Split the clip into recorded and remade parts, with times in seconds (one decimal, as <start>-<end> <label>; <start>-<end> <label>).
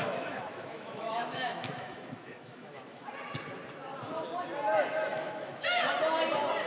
0.0-3.1 remade; 3.1-5.1 recorded; 5.1-5.9 remade; 5.9-6.7 recorded